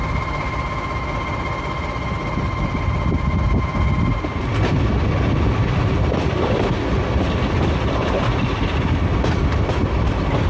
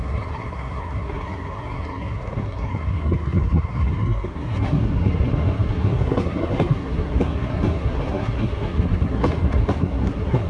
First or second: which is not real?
second